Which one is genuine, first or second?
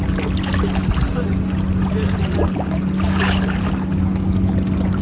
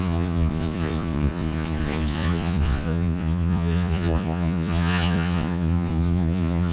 first